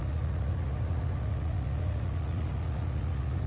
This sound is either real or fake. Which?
fake